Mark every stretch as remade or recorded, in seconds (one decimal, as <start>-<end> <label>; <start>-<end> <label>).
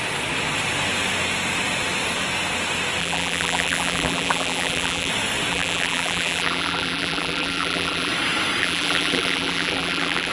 0.0-3.0 recorded; 3.0-5.1 remade; 5.1-5.5 recorded; 5.5-8.1 remade; 8.1-8.6 recorded; 8.6-10.3 remade